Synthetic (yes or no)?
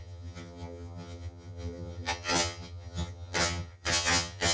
yes